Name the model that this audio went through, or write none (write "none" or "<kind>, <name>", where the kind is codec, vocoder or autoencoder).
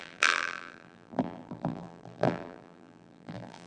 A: vocoder, BigVGAN v2